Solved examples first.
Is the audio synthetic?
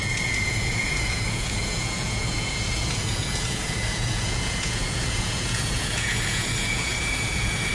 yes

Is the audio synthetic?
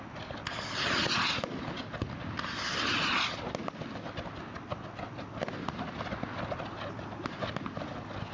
no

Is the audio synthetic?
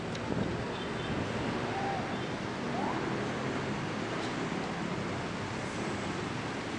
no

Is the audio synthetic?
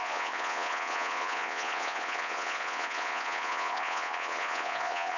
yes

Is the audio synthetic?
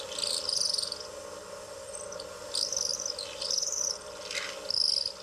no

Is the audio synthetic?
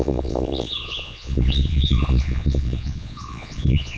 yes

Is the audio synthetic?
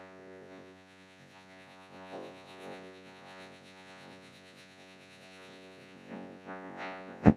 yes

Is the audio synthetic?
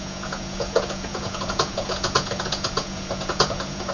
yes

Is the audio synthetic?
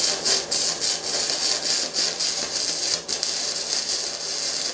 no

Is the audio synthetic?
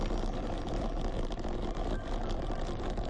no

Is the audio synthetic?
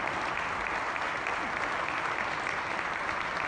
no